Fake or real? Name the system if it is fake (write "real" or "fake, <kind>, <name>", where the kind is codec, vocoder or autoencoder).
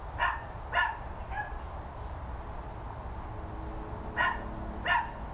real